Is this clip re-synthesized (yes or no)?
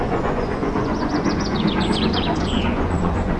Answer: yes